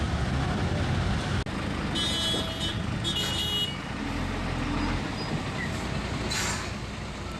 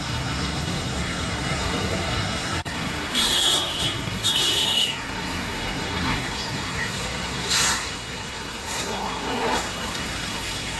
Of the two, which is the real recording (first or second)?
first